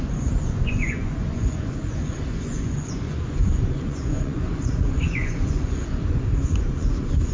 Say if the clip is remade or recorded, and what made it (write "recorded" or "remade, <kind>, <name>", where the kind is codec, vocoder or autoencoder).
remade, vocoder, Vocos